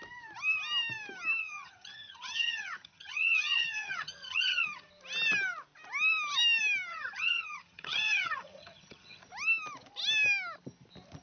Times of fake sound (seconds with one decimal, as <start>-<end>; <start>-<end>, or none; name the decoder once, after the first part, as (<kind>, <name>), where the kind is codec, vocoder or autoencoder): 1.4-4.9 (vocoder, HiFi-GAN); 6.9-9.2